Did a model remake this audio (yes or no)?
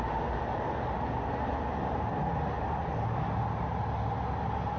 no